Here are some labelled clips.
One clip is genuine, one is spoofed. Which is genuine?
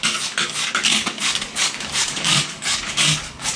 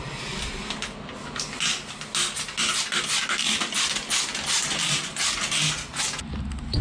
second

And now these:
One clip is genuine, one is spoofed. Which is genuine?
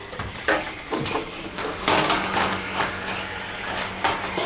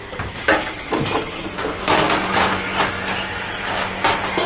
second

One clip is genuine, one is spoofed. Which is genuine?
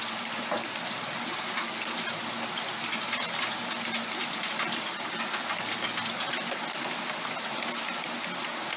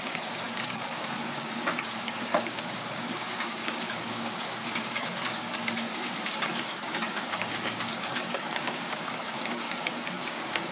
first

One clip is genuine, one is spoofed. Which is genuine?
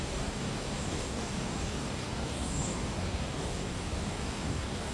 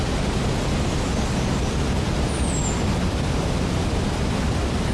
second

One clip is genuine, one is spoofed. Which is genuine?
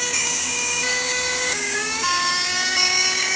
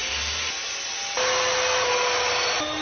second